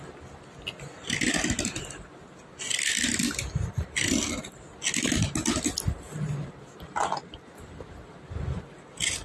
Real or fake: real